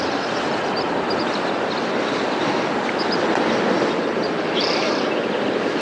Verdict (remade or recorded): recorded